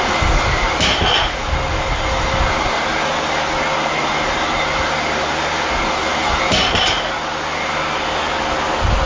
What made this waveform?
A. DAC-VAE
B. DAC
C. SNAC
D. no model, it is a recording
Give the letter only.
D